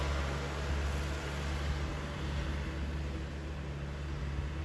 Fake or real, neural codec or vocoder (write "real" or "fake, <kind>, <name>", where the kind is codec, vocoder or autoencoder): real